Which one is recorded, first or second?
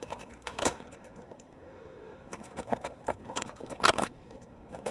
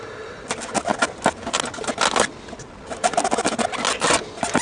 second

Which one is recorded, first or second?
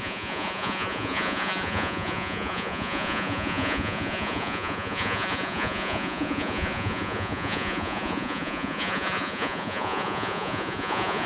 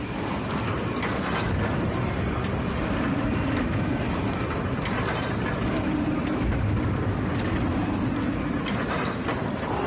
second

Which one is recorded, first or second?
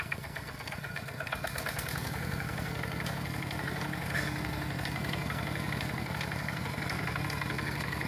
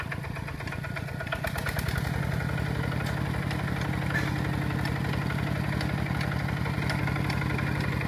second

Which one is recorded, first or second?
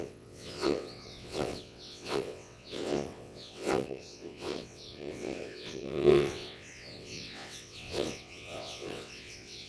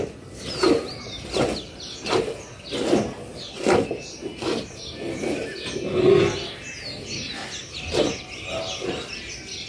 second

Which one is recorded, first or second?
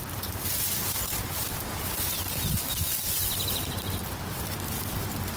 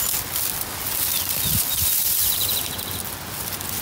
second